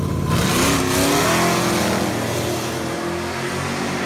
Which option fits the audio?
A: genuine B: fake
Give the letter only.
A